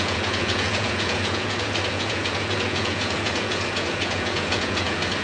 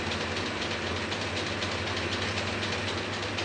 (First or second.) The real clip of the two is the second